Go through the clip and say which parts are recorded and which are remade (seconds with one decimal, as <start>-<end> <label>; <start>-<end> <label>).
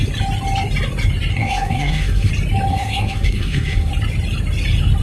0.0-1.3 recorded; 1.3-2.3 remade; 2.3-2.7 recorded; 2.7-3.9 remade; 3.9-5.0 recorded